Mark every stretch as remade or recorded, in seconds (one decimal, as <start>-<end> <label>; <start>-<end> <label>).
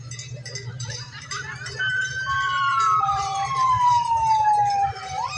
0.0-0.7 recorded; 0.7-3.9 remade; 3.9-4.8 recorded; 4.8-5.4 remade